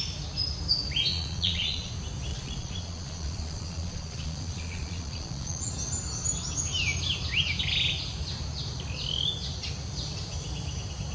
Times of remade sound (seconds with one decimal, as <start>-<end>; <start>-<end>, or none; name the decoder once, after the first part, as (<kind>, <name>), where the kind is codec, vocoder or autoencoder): 1.1-1.9 (vocoder, Vocos); 2.3-5.7